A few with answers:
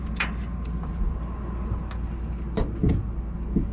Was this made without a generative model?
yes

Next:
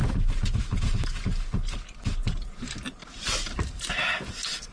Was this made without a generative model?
yes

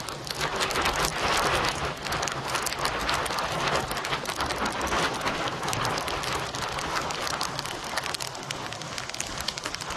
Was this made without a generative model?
yes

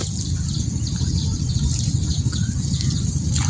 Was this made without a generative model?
yes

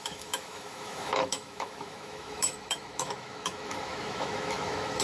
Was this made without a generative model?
no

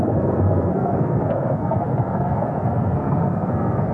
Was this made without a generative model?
no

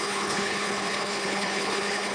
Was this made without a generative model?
no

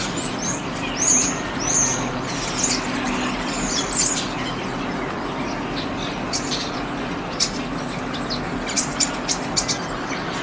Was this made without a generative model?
yes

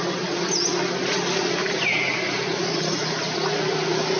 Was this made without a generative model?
yes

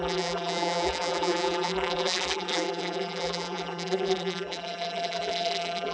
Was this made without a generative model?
no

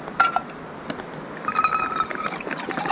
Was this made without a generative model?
yes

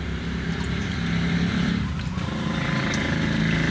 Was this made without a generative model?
yes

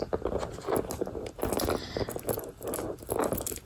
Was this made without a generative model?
yes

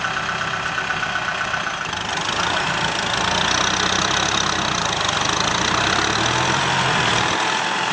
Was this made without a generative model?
yes